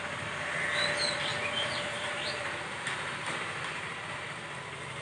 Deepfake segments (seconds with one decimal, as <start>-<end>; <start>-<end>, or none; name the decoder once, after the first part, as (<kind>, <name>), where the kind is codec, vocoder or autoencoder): 1.3-4.1 (vocoder, BigVGAN v2)